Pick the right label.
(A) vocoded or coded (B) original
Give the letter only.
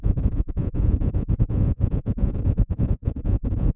A